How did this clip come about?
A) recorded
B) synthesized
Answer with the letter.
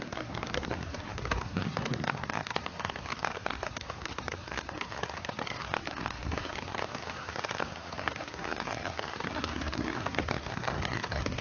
B